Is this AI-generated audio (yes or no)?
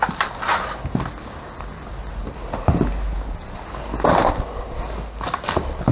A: no